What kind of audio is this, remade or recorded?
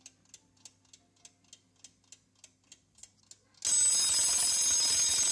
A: recorded